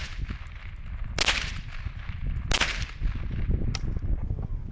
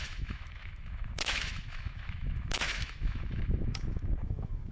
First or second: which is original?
first